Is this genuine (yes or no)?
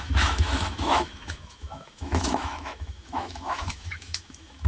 no